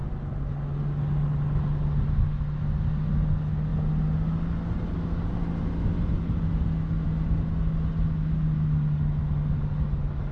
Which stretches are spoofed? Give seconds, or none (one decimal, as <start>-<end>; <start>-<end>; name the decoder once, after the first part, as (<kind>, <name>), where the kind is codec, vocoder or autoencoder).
none